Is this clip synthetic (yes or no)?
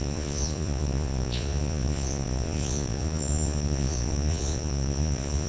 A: yes